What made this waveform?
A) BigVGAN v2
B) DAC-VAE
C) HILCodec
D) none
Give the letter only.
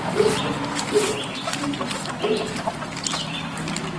A